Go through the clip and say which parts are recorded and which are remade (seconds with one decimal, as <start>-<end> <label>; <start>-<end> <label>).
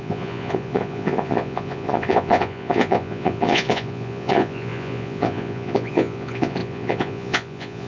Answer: 0.0-7.9 remade